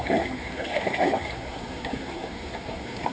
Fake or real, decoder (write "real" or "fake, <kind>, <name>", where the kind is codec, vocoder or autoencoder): fake, codec, SNAC